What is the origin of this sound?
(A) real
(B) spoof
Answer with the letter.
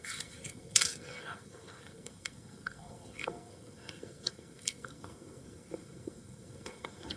B